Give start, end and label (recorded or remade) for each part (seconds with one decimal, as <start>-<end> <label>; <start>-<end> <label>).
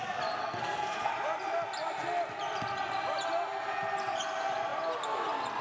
0.0-0.4 recorded; 0.4-1.1 remade; 1.1-5.6 recorded